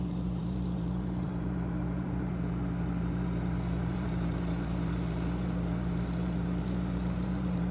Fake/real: fake